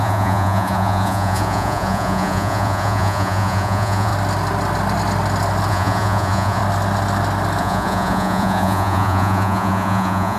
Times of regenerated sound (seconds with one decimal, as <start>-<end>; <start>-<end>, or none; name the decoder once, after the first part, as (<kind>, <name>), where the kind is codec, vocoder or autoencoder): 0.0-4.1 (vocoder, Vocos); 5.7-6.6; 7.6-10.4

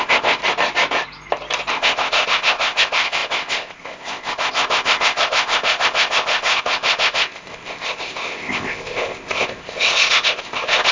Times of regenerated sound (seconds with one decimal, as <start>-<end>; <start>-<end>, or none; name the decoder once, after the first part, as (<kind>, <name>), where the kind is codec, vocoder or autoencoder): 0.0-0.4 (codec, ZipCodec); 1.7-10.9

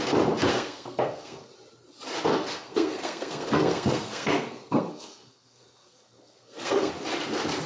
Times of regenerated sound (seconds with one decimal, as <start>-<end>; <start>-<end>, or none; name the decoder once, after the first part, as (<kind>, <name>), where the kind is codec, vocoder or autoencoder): 0.5-1.5 (codec, SNAC); 2.3-6.9